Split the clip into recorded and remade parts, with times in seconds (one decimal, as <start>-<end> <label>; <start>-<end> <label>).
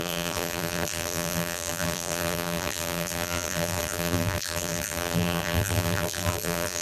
0.0-6.8 remade